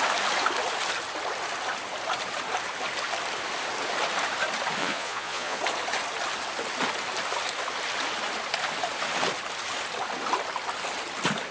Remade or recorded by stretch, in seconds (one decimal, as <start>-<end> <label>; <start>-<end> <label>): 0.0-4.8 recorded; 4.8-5.6 remade; 5.6-11.5 recorded